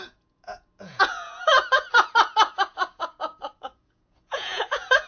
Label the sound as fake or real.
fake